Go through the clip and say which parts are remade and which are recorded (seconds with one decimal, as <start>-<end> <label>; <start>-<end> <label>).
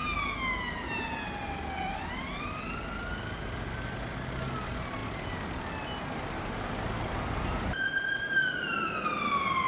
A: 0.0-9.7 recorded